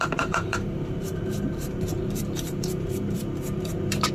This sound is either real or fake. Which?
fake